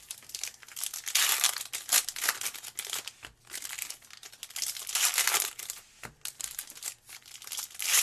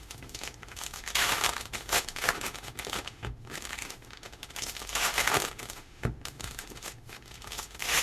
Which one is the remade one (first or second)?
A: second